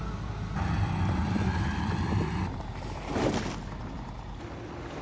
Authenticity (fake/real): real